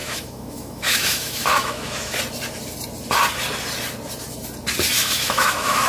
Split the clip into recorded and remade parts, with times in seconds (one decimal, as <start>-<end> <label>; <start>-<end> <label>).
0.0-2.2 remade; 2.2-5.0 recorded; 5.0-5.9 remade